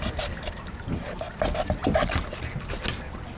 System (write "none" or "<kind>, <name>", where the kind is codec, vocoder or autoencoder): none